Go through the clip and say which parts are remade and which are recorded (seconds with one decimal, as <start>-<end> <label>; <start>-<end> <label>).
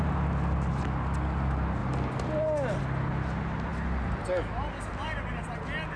0.0-6.0 recorded